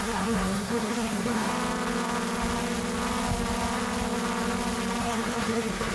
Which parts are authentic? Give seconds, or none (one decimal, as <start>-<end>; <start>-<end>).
1.5-5.0